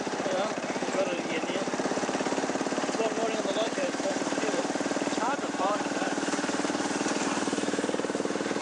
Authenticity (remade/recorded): remade